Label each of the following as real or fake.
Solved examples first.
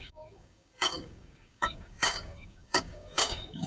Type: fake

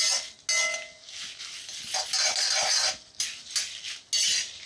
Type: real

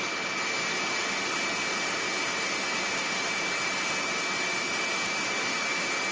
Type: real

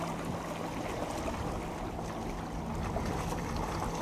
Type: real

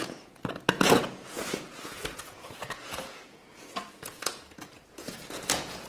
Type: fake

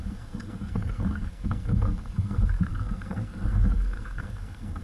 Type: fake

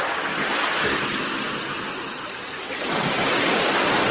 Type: real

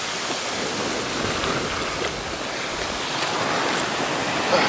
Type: real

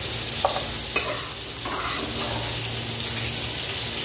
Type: real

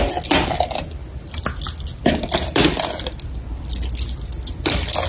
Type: real